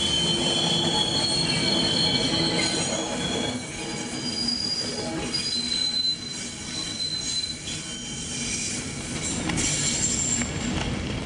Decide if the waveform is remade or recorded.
recorded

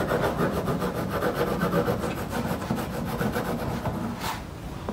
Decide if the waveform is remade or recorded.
recorded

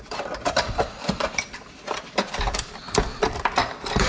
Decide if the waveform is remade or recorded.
remade